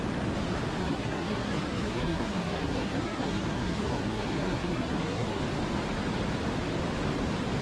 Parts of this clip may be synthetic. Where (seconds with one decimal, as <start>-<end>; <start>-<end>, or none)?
0.8-5.4